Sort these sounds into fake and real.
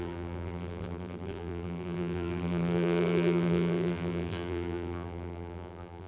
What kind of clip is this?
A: fake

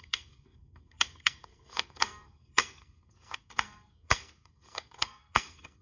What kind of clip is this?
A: fake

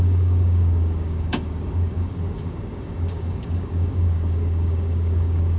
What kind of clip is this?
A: fake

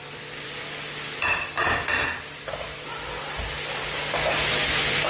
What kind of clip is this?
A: real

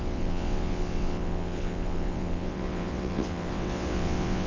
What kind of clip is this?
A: fake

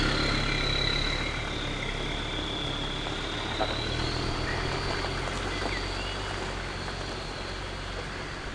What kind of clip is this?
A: real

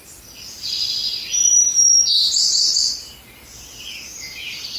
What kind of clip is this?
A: fake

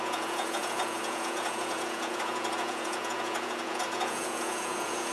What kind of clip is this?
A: fake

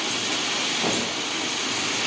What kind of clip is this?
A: real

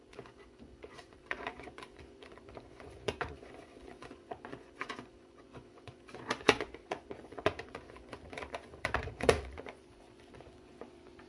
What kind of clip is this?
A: fake